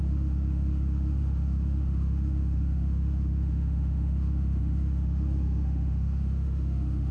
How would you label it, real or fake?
fake